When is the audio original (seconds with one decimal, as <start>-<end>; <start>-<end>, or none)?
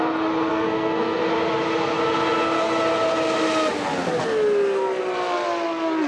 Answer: 0.0-0.5; 1.2-6.1